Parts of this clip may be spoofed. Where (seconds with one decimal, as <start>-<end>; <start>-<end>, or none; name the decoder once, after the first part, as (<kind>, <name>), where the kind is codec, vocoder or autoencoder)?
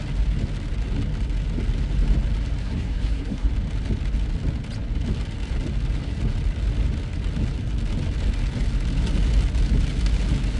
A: 2.6-3.5 (codec, SNAC)